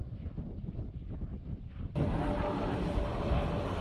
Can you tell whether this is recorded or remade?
recorded